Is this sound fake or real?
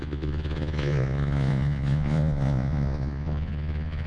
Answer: fake